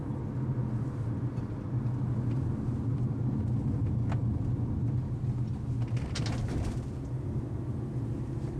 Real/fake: real